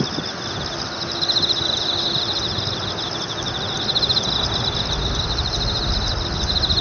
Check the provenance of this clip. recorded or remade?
recorded